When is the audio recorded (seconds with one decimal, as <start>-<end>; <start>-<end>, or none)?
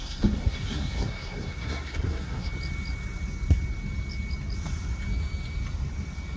2.5-6.4